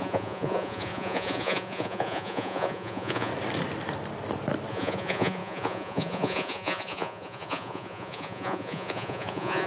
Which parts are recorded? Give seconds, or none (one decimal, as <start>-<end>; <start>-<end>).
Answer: 3.3-4.7